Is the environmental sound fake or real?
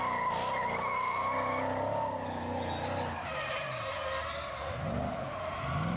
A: real